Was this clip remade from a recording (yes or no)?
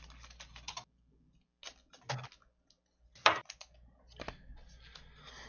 no